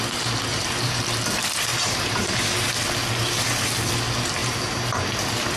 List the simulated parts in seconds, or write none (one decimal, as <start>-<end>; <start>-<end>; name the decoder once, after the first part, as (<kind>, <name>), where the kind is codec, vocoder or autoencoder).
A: 0.5-1.0 (vocoder, BigVGAN v2); 1.7-2.7; 4.4-5.0